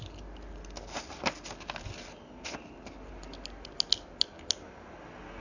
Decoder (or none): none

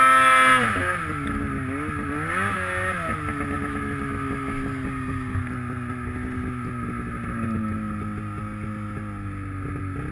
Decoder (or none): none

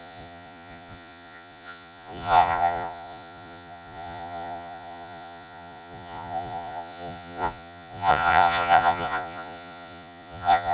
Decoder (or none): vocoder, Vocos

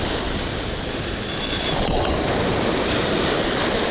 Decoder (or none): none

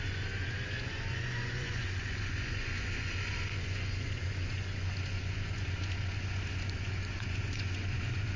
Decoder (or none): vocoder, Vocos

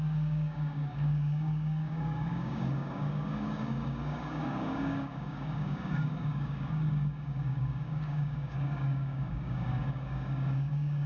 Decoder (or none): codec, DAC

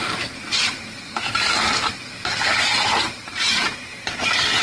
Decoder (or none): vocoder, BigVGAN v2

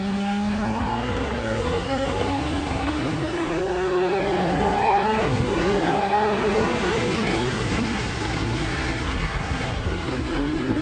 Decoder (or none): codec, SNAC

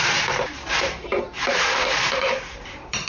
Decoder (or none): vocoder, BigVGAN v2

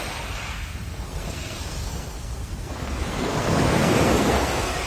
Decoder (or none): codec, SNAC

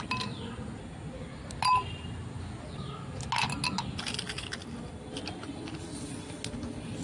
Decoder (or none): none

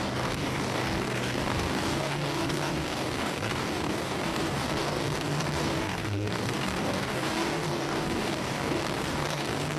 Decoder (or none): codec, DAC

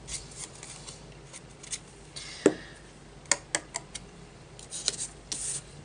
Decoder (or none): none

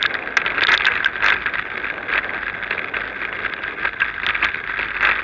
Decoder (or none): none